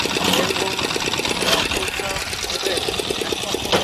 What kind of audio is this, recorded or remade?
recorded